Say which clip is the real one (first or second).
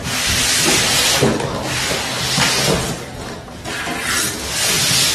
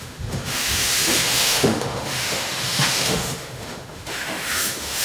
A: first